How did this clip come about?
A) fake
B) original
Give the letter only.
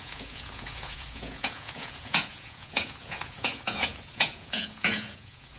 A